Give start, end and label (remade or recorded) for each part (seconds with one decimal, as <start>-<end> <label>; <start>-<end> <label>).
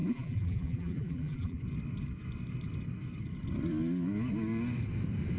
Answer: 0.0-1.6 remade; 1.6-5.4 recorded